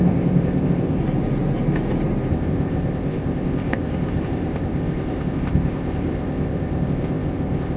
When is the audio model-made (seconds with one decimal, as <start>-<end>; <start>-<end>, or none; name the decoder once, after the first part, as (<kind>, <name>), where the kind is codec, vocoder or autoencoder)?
0.0-1.0 (codec, ZipCodec); 2.3-7.8